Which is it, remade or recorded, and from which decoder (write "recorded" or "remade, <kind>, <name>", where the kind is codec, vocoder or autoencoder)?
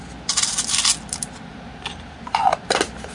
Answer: recorded